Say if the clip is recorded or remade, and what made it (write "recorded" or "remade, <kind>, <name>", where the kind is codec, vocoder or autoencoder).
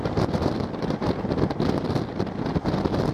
recorded